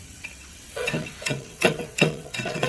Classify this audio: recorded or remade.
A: remade